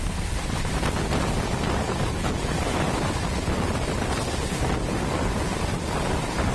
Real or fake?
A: real